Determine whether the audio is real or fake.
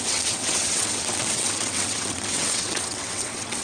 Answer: fake